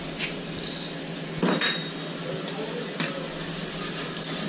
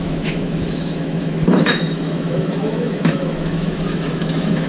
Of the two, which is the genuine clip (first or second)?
first